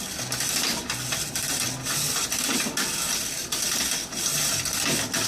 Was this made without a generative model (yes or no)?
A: yes